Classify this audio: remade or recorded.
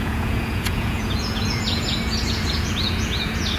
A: remade